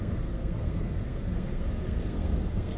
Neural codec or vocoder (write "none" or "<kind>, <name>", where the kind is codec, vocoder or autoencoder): codec, SNAC